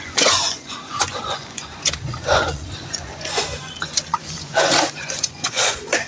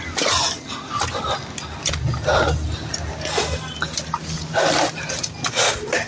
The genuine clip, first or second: second